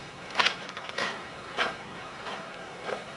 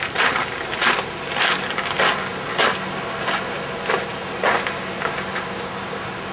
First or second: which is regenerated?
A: first